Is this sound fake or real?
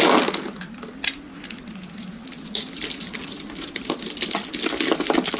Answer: real